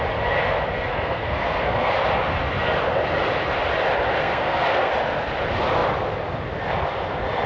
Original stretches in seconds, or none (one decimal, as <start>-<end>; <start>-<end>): 0.0-0.9; 1.9-4.2; 4.9-7.5